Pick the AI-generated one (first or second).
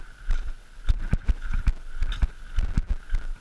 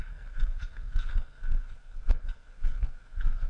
second